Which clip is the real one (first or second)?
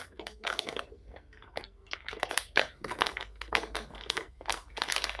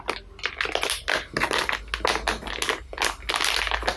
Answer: second